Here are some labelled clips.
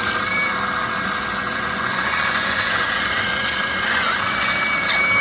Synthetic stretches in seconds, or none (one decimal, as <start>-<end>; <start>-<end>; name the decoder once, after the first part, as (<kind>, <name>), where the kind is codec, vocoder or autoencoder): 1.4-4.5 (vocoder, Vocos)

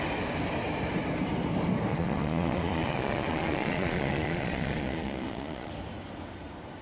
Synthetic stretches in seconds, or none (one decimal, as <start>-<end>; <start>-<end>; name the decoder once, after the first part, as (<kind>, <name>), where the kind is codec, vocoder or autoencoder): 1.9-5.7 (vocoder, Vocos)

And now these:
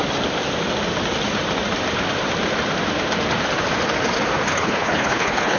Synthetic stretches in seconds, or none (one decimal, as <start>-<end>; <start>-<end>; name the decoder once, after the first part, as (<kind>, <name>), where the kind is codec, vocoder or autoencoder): 4.5-5.6 (codec, HILCodec)